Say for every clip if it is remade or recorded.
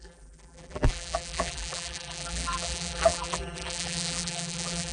remade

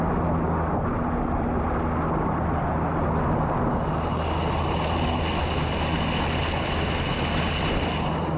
recorded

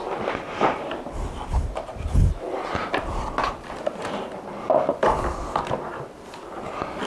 recorded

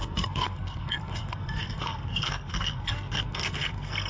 remade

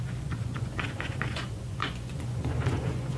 remade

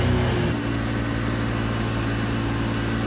recorded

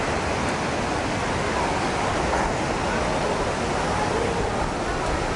recorded